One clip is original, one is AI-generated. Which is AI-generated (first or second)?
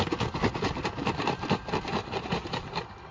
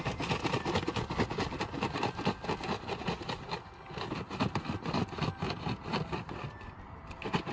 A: first